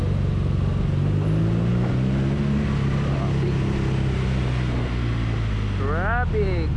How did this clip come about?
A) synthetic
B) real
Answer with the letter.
B